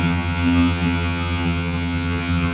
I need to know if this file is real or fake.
fake